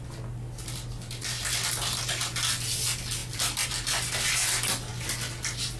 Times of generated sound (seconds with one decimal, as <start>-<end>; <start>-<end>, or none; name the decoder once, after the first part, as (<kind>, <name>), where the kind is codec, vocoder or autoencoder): none